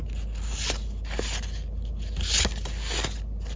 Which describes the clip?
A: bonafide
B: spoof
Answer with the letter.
A